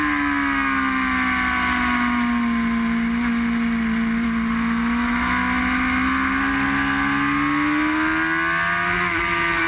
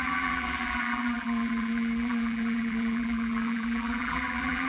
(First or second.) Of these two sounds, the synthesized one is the second